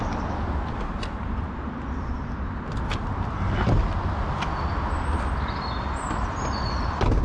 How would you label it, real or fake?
real